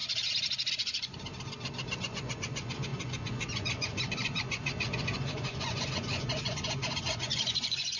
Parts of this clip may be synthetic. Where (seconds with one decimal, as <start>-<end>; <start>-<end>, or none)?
0.7-1.3; 2.0-8.0